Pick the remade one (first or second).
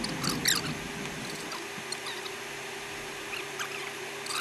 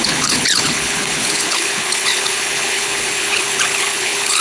second